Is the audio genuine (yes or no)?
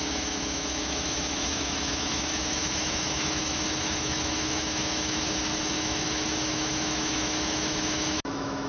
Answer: no